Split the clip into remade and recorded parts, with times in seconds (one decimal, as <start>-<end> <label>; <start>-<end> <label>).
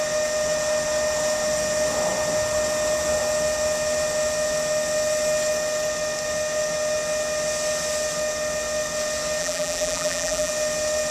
0.0-9.4 recorded; 9.4-10.5 remade; 10.5-11.1 recorded